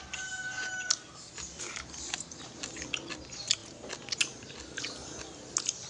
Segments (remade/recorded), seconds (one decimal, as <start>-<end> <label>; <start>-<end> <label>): 0.0-5.9 recorded